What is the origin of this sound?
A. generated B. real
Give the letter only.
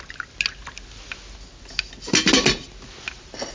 B